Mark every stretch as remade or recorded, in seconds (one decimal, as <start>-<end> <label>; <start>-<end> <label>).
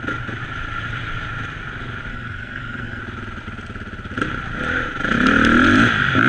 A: 0.0-2.1 recorded; 2.1-3.0 remade; 3.0-6.3 recorded